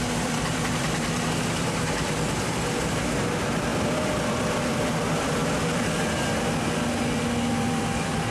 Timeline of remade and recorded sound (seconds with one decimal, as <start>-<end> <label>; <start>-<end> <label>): 0.0-5.4 remade; 5.4-7.7 recorded; 7.7-8.3 remade